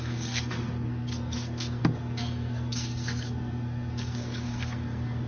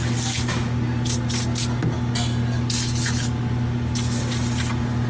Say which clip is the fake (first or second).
first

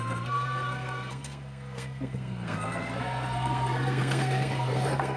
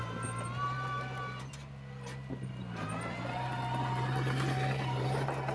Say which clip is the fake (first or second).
first